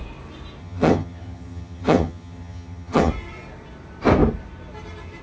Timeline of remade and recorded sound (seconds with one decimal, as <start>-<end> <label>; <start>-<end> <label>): 0.0-0.6 recorded; 0.6-3.1 remade; 3.1-5.2 recorded